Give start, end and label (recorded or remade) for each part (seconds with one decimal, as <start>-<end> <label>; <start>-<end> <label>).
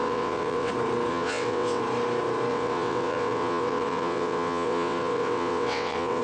0.0-0.7 remade; 0.7-1.1 recorded; 1.1-1.8 remade; 1.8-2.5 recorded; 2.5-6.2 remade